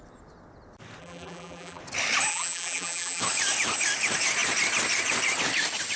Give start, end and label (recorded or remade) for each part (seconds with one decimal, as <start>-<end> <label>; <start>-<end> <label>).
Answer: 0.0-1.0 recorded; 1.0-1.8 remade; 1.8-2.3 recorded; 2.3-3.2 remade; 3.2-6.0 recorded